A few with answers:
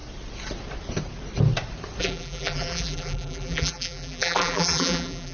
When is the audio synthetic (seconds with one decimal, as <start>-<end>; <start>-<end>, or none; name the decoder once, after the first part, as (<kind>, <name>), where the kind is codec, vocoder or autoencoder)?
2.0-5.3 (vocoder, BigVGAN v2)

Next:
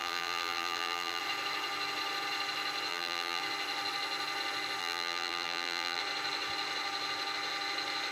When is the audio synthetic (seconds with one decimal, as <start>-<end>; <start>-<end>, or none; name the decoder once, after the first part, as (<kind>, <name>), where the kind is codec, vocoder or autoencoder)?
0.0-1.2 (vocoder, BigVGAN v2); 2.9-3.4; 4.8-6.0

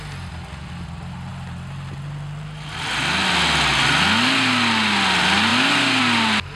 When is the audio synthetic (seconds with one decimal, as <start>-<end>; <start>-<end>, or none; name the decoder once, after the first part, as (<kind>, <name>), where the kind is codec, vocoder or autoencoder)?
none